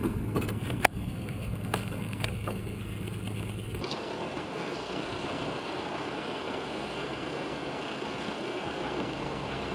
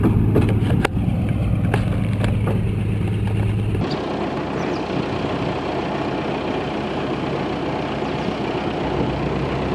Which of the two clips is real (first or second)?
second